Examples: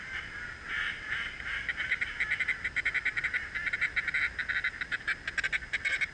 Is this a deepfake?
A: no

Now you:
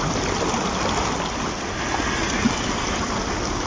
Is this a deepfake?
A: no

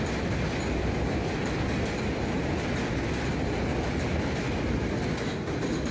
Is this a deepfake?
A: no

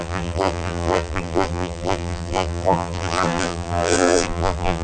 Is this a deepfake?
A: yes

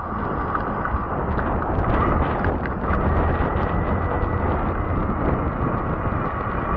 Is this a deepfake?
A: no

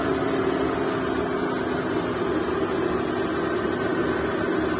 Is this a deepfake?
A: no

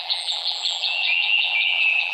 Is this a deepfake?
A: yes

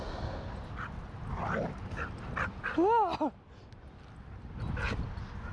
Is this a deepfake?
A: no